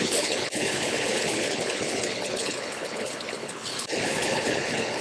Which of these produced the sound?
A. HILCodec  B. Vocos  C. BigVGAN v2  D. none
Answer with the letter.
A